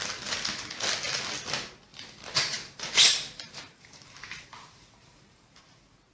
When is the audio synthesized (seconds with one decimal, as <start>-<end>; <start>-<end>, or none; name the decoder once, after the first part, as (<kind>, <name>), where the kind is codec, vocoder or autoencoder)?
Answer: 1.9-5.6 (vocoder, BigVGAN v2)